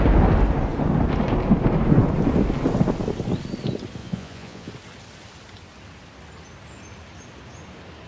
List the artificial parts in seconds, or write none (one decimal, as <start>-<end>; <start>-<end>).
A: 4.0-4.7